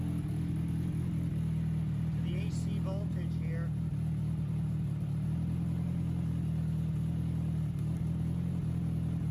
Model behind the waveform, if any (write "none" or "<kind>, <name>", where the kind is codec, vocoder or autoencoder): none